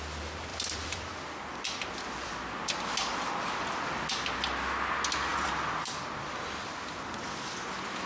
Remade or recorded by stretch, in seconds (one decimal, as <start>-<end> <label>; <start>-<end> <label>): 0.0-0.5 recorded; 0.5-2.8 remade; 2.8-5.3 recorded; 5.3-6.2 remade; 6.2-8.1 recorded